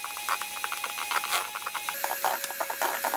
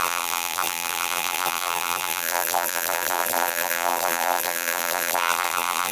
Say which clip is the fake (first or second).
second